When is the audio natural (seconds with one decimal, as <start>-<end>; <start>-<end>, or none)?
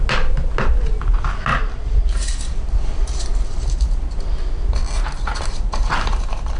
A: 0.0-1.5; 2.4-5.3; 6.1-6.6